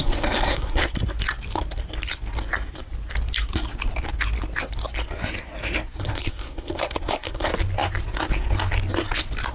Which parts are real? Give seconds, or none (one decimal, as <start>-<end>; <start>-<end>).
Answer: 0.8-6.0; 7.5-9.5